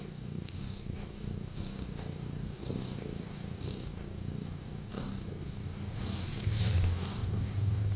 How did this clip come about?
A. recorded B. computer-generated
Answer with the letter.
B